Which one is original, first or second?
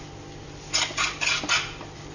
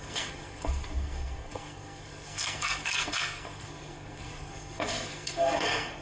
first